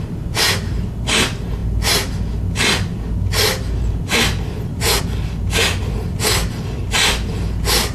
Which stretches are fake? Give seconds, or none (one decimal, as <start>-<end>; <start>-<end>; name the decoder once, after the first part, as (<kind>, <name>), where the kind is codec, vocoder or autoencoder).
none